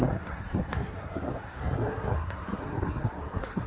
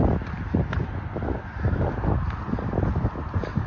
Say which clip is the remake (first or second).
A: first